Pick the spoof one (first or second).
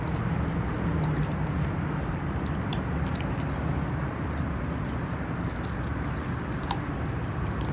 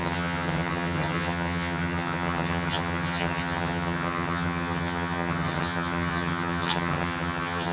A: second